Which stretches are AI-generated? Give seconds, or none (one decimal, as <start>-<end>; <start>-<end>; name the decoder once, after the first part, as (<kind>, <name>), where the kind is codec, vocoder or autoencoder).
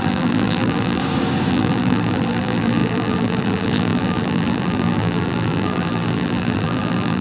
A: 0.0-1.0 (vocoder, BigVGAN v2); 1.5-7.2